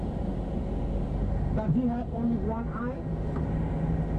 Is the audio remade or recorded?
recorded